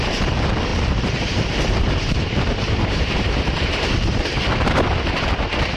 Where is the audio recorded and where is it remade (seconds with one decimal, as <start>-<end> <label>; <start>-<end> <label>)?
0.0-0.7 recorded; 0.7-4.2 remade; 4.2-5.8 recorded